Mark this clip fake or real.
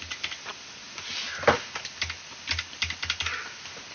real